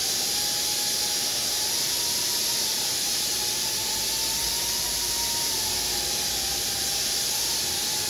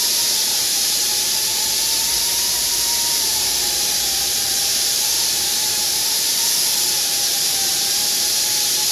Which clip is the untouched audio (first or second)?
first